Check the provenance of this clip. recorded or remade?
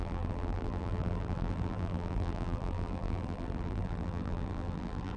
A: remade